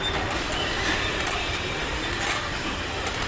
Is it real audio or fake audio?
fake